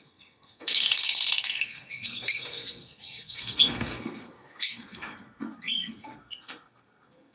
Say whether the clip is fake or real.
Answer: fake